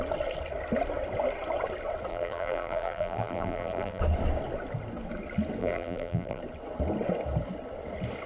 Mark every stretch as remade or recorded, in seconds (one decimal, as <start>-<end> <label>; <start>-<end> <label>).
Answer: 0.0-2.1 recorded; 2.1-4.0 remade; 4.0-5.6 recorded; 5.6-6.4 remade; 6.4-8.3 recorded